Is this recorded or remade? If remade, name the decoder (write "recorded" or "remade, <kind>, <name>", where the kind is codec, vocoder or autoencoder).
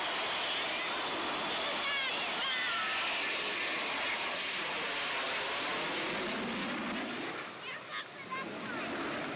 recorded